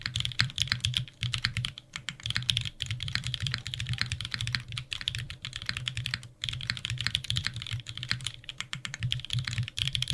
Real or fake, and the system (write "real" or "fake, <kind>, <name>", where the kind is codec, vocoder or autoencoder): fake, vocoder, BigVGAN v2